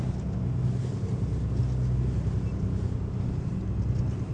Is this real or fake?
real